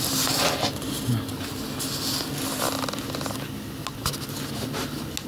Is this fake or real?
real